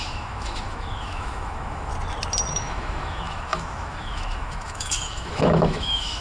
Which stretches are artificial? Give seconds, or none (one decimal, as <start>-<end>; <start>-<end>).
0.0-1.9; 2.5-6.2